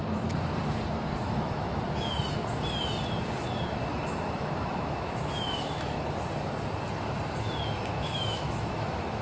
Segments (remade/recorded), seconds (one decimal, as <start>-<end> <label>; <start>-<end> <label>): 0.0-1.2 recorded; 1.2-1.8 remade; 1.8-3.8 recorded; 3.8-6.2 remade; 6.2-7.9 recorded; 7.9-9.2 remade